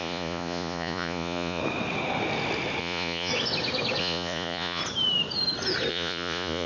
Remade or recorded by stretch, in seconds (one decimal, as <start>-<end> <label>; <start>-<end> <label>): 0.0-1.6 remade; 1.6-2.8 recorded; 2.8-3.3 remade; 3.3-4.0 recorded; 4.0-4.8 remade; 4.8-5.9 recorded; 5.9-6.7 remade